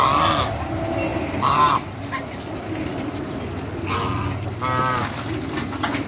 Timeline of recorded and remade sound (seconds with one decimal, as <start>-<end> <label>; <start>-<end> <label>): 0.0-6.1 recorded